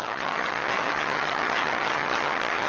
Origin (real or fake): fake